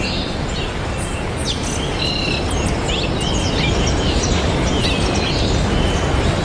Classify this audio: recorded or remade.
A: recorded